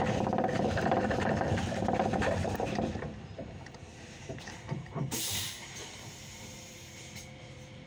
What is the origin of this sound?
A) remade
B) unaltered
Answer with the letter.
A